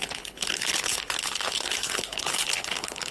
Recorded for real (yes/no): no